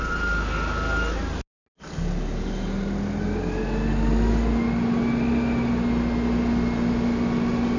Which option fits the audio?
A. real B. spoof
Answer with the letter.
A